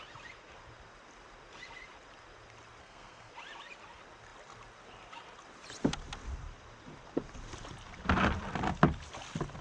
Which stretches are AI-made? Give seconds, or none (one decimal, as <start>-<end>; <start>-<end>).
2.8-3.3